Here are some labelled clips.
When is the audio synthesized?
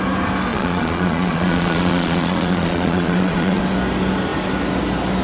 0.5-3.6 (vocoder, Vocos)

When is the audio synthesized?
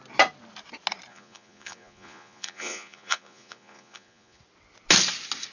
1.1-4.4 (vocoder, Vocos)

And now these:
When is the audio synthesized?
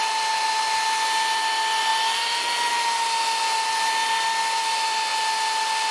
none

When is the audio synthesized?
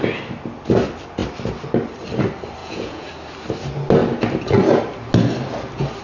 2.6-3.1 (vocoder, Vocos)